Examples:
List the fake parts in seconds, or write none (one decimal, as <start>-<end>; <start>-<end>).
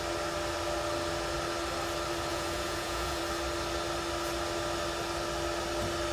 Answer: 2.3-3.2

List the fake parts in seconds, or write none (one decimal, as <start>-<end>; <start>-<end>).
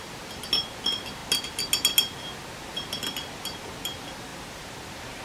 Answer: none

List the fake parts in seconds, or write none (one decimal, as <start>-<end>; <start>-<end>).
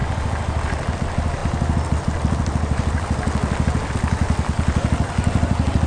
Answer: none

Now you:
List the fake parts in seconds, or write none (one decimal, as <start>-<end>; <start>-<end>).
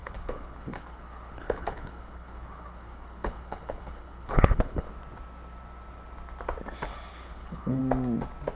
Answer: 0.0-4.9; 7.1-7.8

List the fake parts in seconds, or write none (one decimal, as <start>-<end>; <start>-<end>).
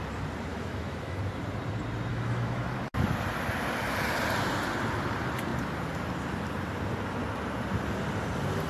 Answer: 0.5-1.2; 2.1-2.9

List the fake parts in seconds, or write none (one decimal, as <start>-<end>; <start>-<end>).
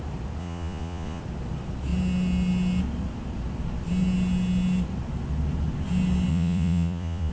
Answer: 0.4-1.2; 6.3-7.3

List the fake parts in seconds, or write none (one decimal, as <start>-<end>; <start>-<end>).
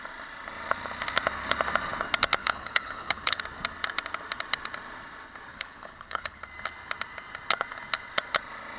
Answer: 2.4-3.4; 5.5-6.4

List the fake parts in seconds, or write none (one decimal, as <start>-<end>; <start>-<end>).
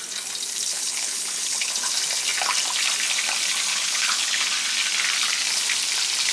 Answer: 0.7-1.9; 3.7-4.4